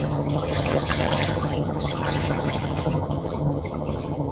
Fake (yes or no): yes